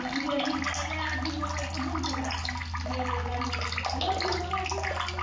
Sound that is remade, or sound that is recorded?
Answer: recorded